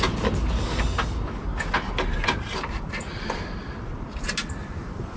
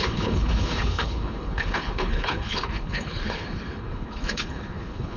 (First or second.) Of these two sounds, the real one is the first